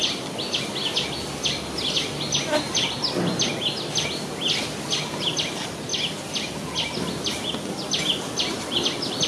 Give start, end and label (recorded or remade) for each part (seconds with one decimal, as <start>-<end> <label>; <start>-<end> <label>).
0.0-9.3 recorded